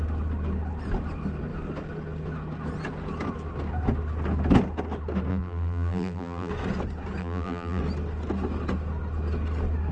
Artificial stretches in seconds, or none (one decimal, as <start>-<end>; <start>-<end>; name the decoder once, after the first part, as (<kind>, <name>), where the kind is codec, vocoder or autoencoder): 5.3-6.5 (vocoder, BigVGAN v2); 7.2-7.8